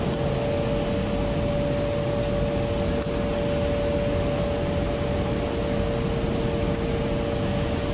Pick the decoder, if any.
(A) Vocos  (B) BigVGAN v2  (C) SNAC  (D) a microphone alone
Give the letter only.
D